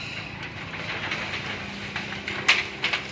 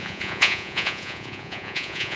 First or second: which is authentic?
first